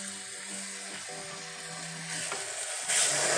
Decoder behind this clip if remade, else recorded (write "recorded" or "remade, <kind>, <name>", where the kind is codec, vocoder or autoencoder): recorded